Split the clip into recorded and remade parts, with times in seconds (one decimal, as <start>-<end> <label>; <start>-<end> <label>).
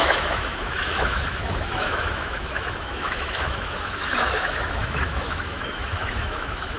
0.0-6.8 remade